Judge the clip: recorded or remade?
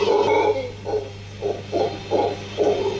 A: recorded